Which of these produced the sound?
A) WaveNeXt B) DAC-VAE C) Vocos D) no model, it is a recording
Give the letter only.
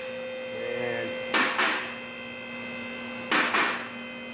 D